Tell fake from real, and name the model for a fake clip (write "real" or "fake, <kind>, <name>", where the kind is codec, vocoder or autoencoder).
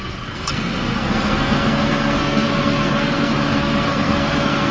fake, codec, SNAC